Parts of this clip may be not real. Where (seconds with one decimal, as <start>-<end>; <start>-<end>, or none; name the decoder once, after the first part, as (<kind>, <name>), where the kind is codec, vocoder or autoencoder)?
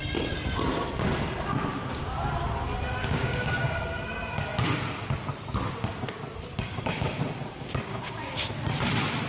1.7-2.3 (codec, DAC); 3.0-3.8; 7.9-8.6